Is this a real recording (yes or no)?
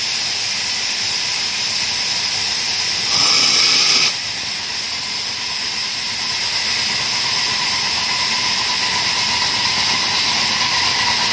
yes